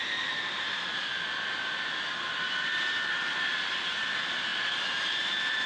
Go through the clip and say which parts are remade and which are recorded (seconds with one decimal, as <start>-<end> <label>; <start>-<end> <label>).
0.0-0.9 remade; 0.9-4.0 recorded; 4.0-5.7 remade

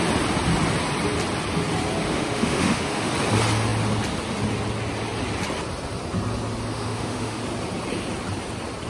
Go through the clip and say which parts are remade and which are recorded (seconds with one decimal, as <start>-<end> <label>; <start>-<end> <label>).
0.0-2.1 recorded; 2.1-3.1 remade; 3.1-6.7 recorded; 6.7-7.4 remade; 7.4-8.9 recorded

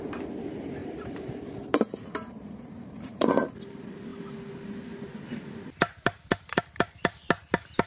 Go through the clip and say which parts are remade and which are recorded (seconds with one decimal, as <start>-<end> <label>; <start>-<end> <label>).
0.0-0.8 recorded; 0.8-3.6 remade; 3.6-7.9 recorded